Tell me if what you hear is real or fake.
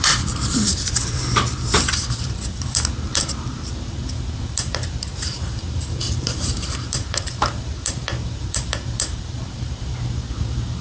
fake